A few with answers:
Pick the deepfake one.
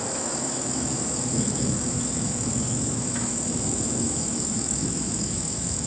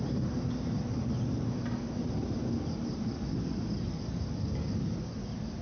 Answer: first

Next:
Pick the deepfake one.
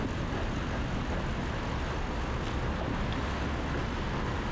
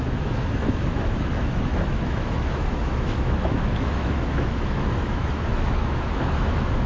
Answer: second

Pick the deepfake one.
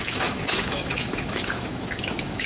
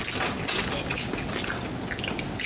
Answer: first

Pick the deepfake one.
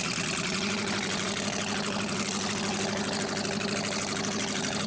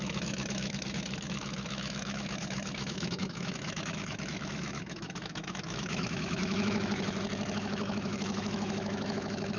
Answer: second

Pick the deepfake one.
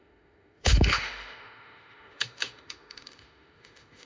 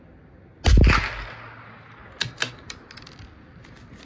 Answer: first